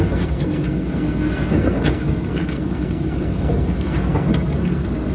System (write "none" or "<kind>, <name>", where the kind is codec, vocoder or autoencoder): codec, SNAC